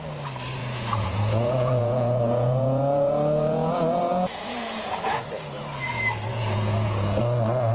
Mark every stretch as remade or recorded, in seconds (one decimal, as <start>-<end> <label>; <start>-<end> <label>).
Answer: 0.0-0.6 recorded; 0.6-5.2 remade; 5.2-6.3 recorded; 6.3-7.2 remade; 7.2-7.7 recorded